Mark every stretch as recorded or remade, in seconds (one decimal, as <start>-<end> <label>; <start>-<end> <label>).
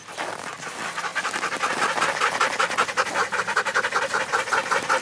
0.0-5.0 recorded